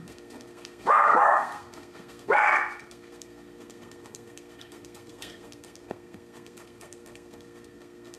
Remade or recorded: remade